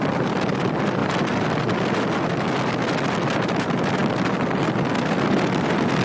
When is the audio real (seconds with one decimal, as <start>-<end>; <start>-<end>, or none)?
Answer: 0.0-6.0

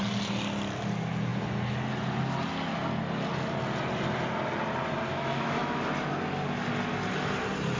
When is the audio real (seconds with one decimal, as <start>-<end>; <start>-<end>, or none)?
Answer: 0.0-5.1; 5.9-7.8

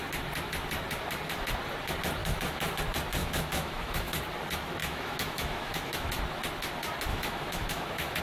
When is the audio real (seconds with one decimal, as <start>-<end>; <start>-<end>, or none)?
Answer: 0.0-2.2; 2.8-3.2; 4.2-4.8; 6.2-7.1

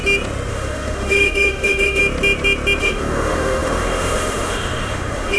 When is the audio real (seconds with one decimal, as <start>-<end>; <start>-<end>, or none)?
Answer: 0.0-0.5; 2.0-2.8